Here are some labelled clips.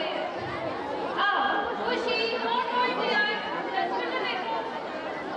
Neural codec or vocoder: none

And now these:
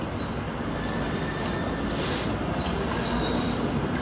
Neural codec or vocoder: none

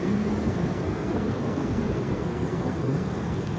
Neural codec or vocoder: codec, SNAC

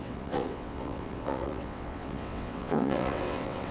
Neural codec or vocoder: vocoder, WaveNeXt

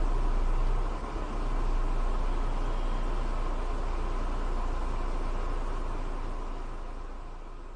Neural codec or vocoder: none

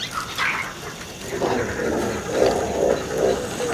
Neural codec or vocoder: none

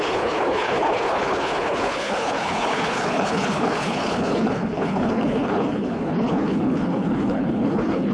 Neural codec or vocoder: codec, HILCodec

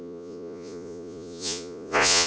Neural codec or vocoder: vocoder, Vocos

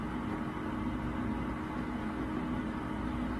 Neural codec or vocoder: none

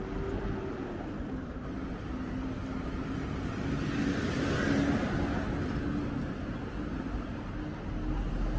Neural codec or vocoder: none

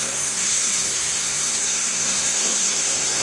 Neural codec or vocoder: codec, SNAC